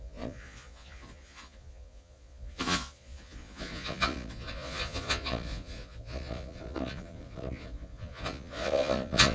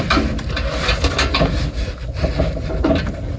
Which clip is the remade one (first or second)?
first